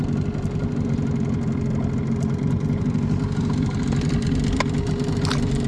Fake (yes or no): no